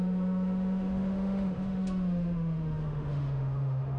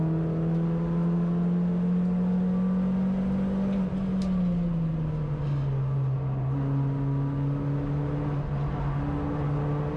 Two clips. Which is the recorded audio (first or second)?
second